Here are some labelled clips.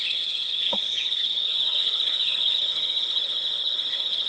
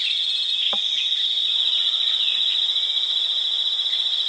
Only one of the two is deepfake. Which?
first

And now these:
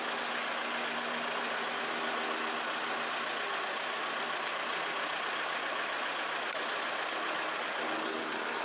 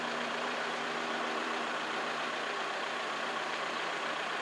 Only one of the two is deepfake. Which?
second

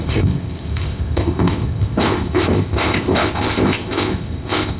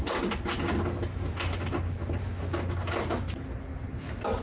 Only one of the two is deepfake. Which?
first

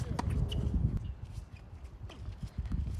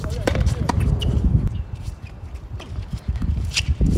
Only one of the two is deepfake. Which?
second